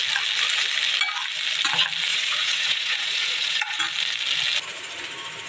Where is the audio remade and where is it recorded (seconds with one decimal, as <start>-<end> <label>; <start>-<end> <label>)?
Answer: 0.0-2.1 recorded; 2.1-3.8 remade; 3.8-5.5 recorded